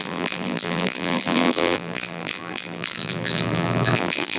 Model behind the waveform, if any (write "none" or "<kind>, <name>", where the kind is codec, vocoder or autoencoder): vocoder, BigVGAN v2